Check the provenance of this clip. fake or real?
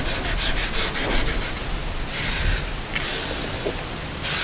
real